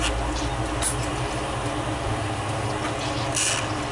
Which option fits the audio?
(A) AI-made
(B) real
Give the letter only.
B